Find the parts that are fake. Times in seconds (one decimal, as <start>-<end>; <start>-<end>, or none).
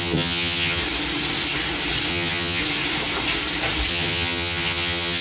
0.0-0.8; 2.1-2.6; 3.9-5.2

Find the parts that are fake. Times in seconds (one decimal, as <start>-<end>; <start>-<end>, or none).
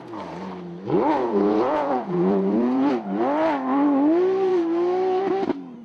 1.2-2.9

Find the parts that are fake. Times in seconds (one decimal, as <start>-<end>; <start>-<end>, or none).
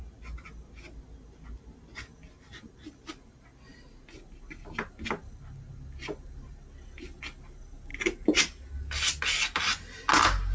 none